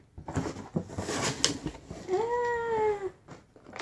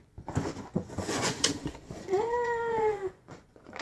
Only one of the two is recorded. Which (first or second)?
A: first